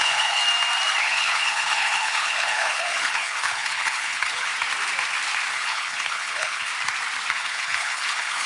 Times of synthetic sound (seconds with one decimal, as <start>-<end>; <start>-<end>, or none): 0.0-0.4; 1.0-4.5; 5.5-6.7; 7.3-8.5